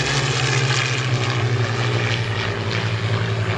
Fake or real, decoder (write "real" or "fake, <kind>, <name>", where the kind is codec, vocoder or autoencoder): real